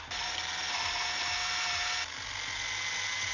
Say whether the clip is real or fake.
real